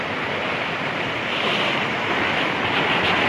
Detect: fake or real real